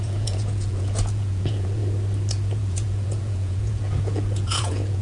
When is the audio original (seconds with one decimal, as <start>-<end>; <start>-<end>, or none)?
1.8-2.3

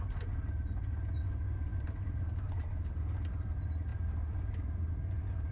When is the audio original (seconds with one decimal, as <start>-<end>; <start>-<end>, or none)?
0.0-5.5

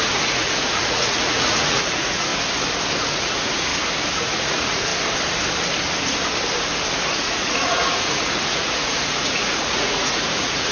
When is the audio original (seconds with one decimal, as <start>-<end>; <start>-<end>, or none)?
2.3-3.0; 3.7-4.2; 4.9-7.1

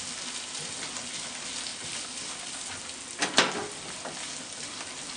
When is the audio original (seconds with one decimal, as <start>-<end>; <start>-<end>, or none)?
0.0-5.2

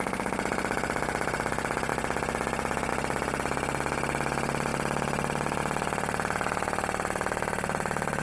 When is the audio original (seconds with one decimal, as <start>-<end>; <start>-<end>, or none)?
0.0-8.2

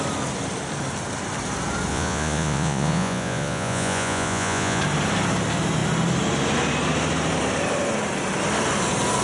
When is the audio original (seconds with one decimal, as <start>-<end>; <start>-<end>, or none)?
0.0-1.9; 4.8-9.2

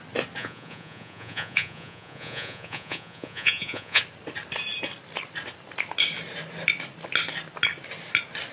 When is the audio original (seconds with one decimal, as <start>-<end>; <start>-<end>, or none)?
0.0-0.4; 4.0-8.5

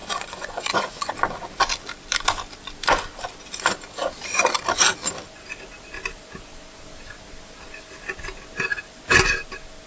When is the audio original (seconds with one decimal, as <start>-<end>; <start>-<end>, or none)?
1.1-9.9